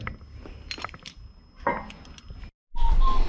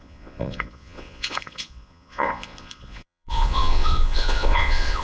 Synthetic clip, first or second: second